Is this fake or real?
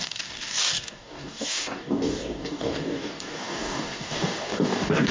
fake